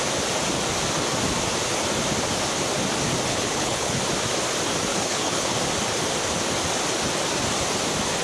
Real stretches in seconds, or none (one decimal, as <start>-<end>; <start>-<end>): 0.0-3.3; 4.0-4.9; 5.5-8.2